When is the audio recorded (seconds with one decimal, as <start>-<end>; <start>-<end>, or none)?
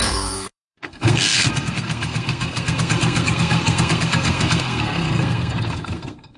none